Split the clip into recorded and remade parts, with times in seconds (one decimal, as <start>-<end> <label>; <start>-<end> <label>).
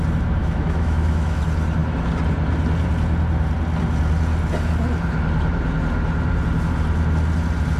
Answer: 0.0-0.4 recorded; 0.4-1.4 remade; 1.4-7.8 recorded